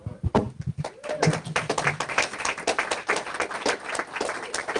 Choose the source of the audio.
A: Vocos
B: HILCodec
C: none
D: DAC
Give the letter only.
C